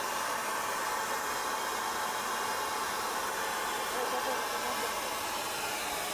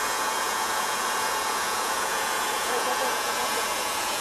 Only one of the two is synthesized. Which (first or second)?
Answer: second